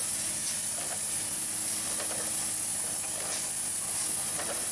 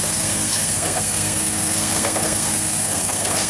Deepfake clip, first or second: second